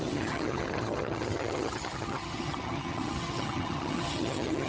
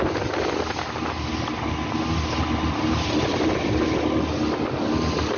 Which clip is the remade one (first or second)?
first